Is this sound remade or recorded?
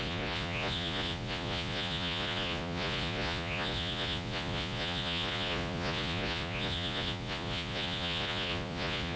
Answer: remade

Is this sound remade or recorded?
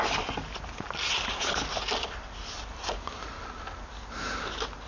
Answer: recorded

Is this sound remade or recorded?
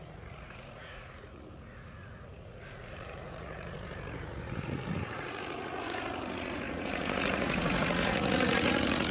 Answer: remade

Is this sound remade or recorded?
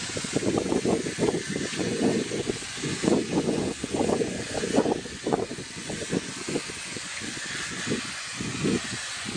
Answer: remade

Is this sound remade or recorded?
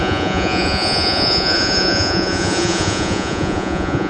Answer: remade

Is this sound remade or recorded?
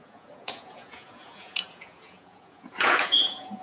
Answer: remade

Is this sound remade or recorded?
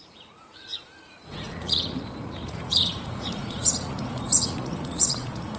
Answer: remade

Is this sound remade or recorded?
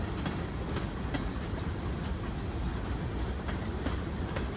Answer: recorded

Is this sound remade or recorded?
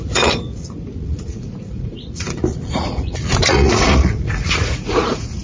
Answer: remade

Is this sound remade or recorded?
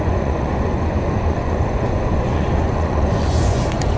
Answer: remade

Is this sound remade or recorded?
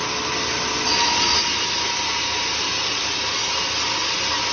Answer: recorded